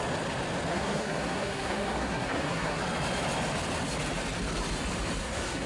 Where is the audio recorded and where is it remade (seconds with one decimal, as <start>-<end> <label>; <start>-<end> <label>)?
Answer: 0.0-0.7 recorded; 0.7-2.8 remade; 2.8-5.2 recorded; 5.2-5.7 remade